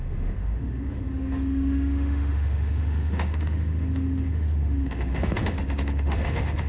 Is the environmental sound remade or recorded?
remade